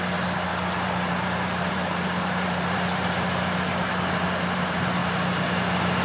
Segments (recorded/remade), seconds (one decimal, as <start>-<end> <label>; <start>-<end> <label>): 0.0-0.5 recorded; 0.5-3.9 remade; 3.9-6.0 recorded